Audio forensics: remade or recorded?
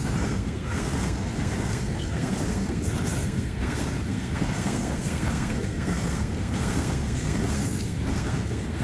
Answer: remade